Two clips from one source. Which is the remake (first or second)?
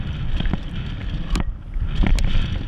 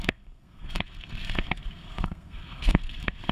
second